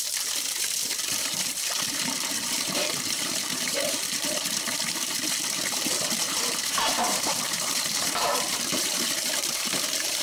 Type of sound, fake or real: fake